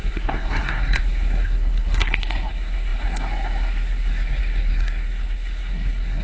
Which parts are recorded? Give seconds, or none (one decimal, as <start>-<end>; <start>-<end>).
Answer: none